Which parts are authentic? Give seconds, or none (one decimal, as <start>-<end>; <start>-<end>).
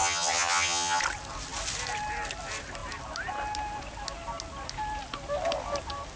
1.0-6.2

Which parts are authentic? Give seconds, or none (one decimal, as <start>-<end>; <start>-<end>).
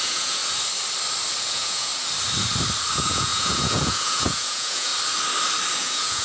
0.4-1.5; 1.9-2.9; 4.9-5.8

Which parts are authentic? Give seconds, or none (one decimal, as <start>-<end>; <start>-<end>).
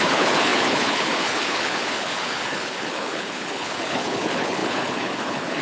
none